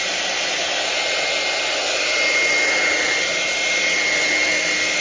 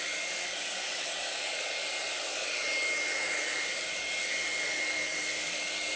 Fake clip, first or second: second